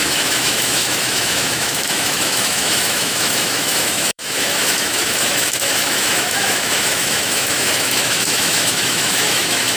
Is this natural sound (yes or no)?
no